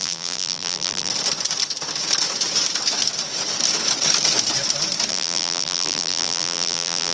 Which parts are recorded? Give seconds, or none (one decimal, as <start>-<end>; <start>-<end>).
1.1-5.1